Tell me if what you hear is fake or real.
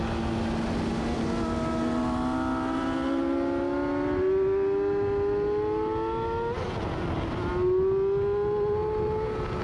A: real